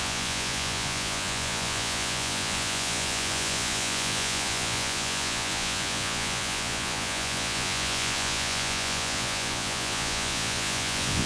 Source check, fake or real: fake